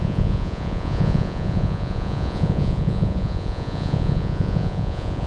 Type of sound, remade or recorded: remade